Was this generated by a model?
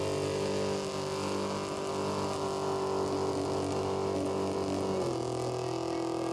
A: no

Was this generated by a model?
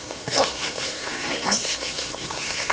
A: yes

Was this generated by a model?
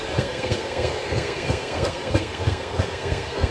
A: yes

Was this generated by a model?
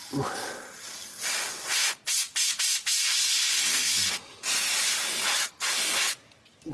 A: no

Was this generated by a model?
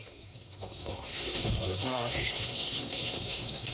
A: yes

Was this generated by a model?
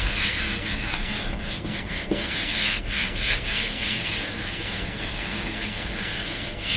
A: yes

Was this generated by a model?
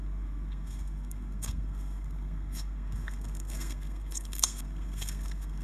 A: yes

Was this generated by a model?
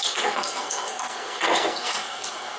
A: yes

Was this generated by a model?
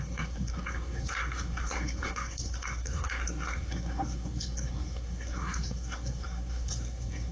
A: yes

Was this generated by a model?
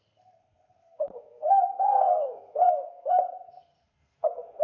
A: yes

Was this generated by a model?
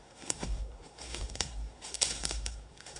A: yes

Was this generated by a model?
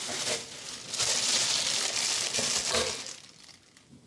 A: no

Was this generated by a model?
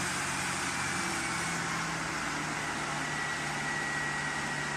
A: no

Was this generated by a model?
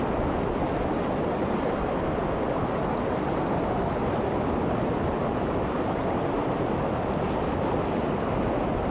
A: no